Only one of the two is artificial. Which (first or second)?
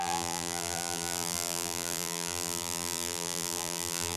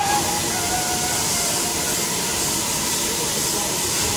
first